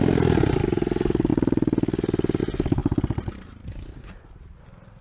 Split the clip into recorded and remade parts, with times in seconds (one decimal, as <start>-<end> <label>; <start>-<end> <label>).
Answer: 0.0-5.0 recorded